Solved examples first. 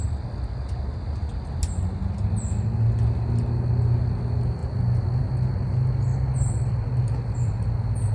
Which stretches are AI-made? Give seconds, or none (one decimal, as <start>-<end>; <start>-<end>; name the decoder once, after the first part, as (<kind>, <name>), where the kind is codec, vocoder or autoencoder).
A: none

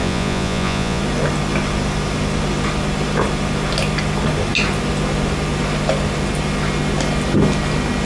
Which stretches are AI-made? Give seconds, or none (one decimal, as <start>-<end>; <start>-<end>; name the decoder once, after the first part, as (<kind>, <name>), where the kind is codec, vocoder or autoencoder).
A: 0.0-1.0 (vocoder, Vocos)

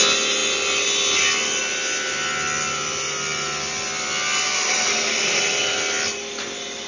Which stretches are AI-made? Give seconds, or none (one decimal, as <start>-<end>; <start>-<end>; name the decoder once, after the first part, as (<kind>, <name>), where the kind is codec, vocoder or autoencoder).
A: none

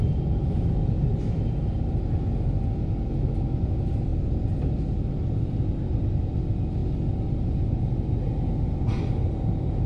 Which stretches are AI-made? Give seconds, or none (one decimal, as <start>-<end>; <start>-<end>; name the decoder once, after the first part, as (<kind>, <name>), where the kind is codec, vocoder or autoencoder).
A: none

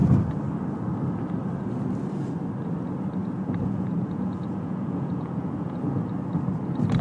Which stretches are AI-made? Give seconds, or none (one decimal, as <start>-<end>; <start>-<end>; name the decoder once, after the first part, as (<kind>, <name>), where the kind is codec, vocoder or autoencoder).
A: 3.2-5.9 (vocoder, Vocos)

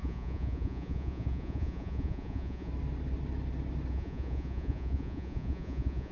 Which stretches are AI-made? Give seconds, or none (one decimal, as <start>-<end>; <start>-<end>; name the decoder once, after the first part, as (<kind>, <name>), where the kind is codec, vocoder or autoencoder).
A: 0.0-2.7 (vocoder, Vocos); 3.9-6.1